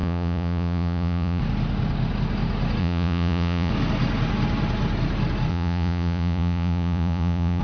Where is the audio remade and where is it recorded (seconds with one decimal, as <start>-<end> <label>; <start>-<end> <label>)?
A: 0.0-1.4 remade; 1.4-2.8 recorded; 2.8-3.7 remade; 3.7-5.5 recorded; 5.5-7.6 remade